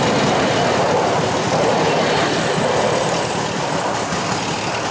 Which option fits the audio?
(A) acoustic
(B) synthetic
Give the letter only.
B